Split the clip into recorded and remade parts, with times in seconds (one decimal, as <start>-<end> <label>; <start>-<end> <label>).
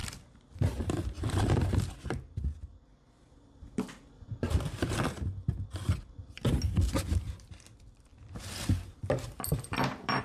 0.0-10.2 recorded